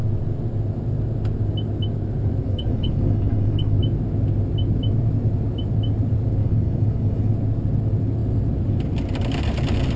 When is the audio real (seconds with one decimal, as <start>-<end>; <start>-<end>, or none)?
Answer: 0.0-2.4; 3.8-6.4; 7.3-10.0